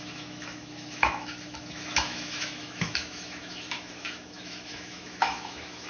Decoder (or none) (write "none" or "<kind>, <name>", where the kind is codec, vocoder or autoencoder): autoencoder, DAC-VAE